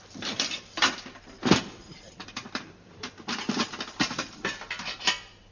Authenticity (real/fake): fake